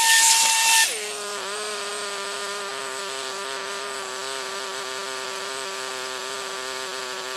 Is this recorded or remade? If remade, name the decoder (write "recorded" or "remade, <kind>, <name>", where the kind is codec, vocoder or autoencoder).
remade, vocoder, BigVGAN v2